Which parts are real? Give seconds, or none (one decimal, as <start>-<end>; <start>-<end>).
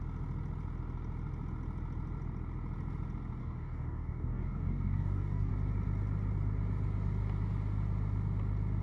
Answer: 0.0-3.4; 5.5-8.8